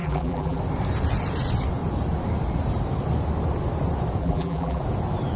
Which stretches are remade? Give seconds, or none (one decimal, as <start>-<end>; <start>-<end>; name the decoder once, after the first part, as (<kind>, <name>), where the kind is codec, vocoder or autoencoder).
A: 0.0-0.6 (vocoder, BigVGAN v2); 4.2-4.8